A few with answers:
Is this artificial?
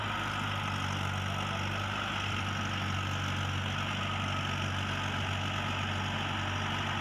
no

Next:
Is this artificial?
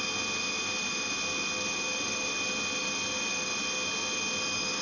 no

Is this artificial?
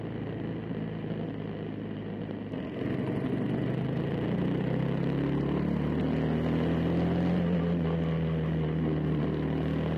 no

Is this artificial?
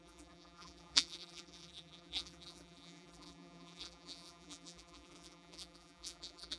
yes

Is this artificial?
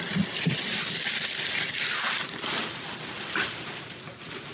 yes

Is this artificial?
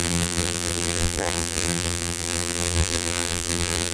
yes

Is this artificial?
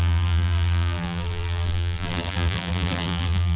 yes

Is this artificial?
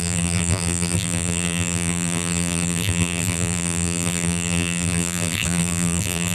yes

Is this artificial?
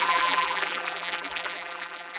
yes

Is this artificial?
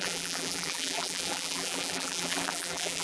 yes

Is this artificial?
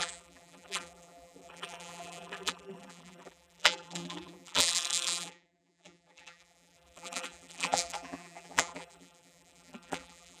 yes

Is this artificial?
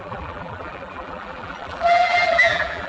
yes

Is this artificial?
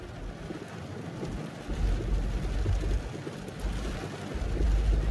no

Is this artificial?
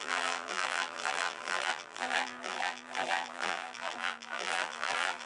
yes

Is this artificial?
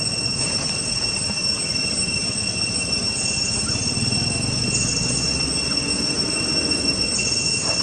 no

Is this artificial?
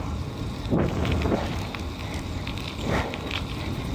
no